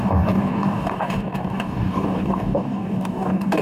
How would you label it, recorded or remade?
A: remade